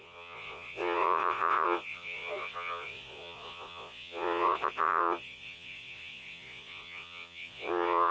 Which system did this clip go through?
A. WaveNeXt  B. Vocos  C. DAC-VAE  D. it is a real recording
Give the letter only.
B